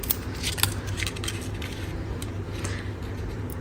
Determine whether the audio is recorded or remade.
recorded